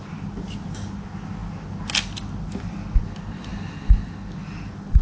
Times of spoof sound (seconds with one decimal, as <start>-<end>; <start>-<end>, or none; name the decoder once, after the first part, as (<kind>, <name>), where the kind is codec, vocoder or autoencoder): none